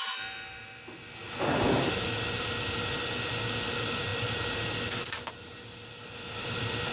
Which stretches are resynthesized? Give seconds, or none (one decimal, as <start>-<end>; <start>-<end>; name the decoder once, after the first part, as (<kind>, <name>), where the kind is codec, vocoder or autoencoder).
none